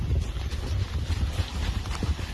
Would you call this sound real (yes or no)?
yes